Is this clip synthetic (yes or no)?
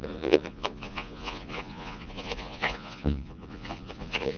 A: yes